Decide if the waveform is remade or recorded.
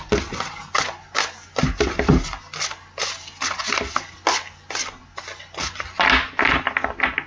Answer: recorded